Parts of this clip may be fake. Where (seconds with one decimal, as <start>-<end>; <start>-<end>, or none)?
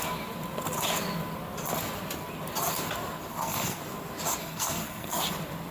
3.3-3.8; 4.4-5.2